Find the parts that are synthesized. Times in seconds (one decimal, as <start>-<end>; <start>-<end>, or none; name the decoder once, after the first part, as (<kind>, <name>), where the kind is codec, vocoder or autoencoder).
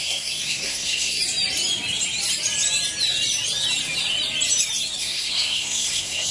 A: 0.0-1.2 (codec, SNAC); 5.0-6.3